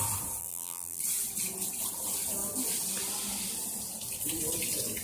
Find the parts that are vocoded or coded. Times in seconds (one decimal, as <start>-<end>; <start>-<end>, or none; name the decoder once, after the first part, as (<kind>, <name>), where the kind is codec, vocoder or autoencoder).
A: 0.4-1.0 (vocoder, BigVGAN v2)